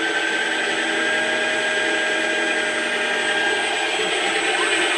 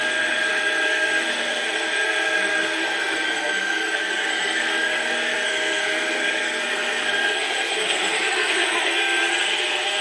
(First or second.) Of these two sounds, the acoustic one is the first